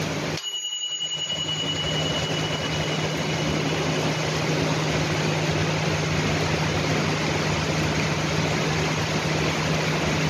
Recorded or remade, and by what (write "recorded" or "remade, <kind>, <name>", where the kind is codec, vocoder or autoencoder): recorded